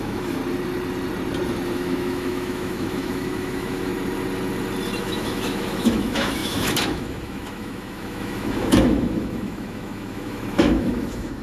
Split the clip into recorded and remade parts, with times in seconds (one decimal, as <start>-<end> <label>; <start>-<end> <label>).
0.0-0.4 remade; 0.4-1.7 recorded; 1.7-3.9 remade; 3.9-5.0 recorded; 5.0-11.4 remade